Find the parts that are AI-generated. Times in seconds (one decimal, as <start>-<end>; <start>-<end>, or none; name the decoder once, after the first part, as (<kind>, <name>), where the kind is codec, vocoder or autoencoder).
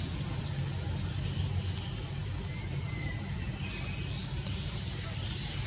4.2-5.3 (vocoder, BigVGAN v2)